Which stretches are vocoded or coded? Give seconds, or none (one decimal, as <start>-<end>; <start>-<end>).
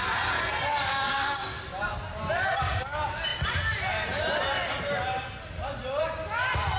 0.9-1.6